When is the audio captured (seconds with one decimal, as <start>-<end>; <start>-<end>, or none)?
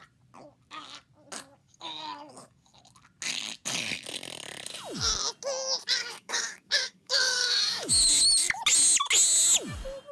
0.0-1.6; 2.8-6.0; 7.9-10.1